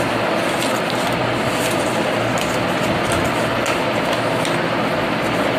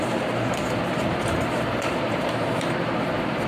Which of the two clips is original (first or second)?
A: first